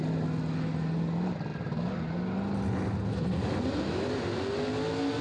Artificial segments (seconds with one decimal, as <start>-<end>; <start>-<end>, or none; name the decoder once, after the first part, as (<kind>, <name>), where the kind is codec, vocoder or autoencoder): none